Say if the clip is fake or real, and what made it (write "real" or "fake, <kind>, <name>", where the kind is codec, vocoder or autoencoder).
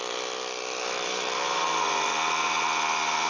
fake, vocoder, BigVGAN v2